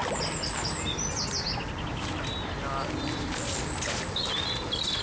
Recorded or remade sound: recorded